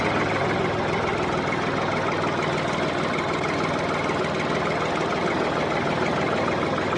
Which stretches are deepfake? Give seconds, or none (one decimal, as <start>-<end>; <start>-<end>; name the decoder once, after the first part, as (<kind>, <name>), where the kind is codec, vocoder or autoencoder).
0.0-1.1 (vocoder, BigVGAN v2); 5.3-7.0